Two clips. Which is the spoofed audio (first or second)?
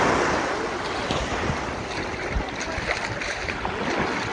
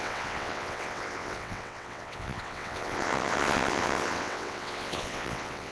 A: second